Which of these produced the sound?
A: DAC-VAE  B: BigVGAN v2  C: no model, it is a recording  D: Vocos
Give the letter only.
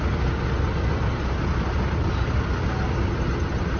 C